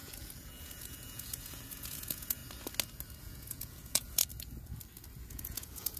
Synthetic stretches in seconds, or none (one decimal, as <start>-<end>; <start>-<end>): 0.0-2.4; 3.2-4.2; 5.3-6.0